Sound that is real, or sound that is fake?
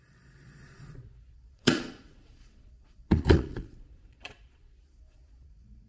fake